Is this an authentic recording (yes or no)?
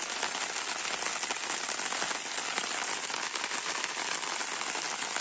yes